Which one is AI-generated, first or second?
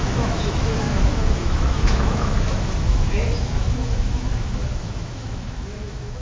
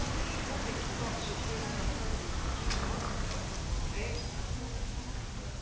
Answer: first